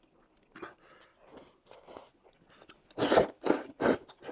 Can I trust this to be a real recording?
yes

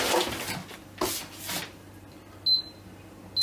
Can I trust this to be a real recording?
yes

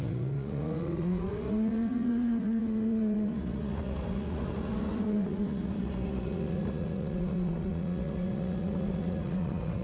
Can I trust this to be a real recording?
no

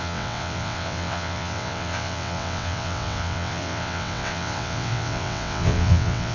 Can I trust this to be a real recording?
no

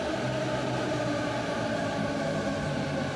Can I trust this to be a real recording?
yes